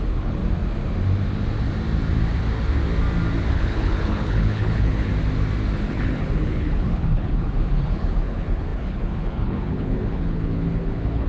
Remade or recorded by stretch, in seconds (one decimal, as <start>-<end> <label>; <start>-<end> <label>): 0.0-0.4 remade; 0.4-3.5 recorded; 3.5-5.1 remade; 5.1-5.9 recorded; 5.9-11.3 remade